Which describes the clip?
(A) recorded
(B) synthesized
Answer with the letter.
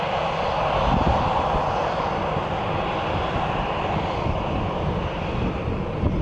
A